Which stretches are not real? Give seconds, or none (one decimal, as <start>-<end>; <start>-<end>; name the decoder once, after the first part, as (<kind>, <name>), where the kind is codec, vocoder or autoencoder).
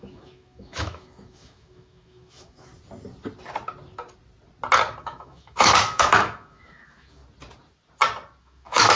0.0-2.7 (autoencoder, DAC-VAE); 5.0-7.2; 8.4-9.0